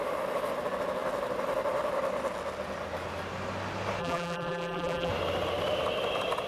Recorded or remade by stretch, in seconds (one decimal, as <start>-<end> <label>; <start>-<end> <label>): 0.0-4.0 recorded; 4.0-5.1 remade; 5.1-6.5 recorded